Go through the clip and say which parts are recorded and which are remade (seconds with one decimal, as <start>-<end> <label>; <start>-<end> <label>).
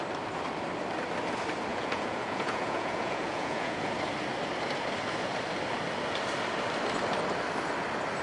0.0-1.7 recorded; 1.7-3.9 remade; 3.9-8.2 recorded